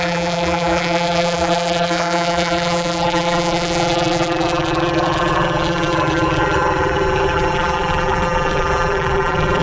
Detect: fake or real fake